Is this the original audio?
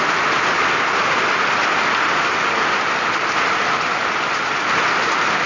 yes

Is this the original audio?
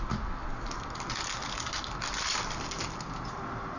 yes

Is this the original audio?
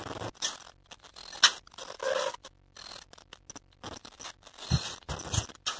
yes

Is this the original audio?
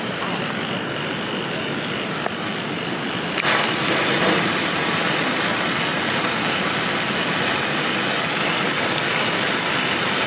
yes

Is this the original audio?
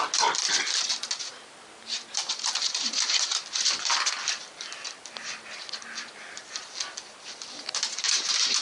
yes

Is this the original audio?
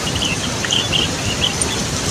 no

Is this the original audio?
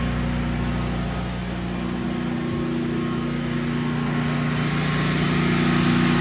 yes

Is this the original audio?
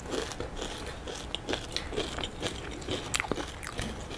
yes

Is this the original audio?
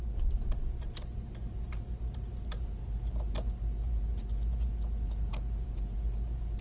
no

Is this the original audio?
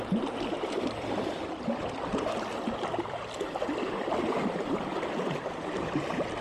no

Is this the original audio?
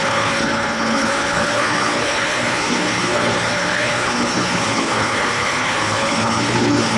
no